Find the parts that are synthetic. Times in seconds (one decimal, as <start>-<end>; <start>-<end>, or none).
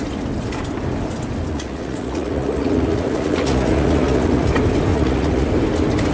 1.5-4.5; 4.9-5.5